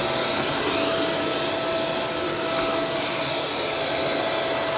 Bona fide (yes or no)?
yes